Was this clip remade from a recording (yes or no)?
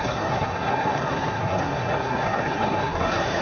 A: yes